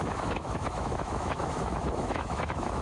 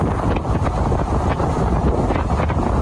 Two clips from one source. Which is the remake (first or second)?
first